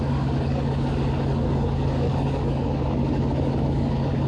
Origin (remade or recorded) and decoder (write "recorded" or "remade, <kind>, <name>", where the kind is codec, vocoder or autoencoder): remade, codec, DAC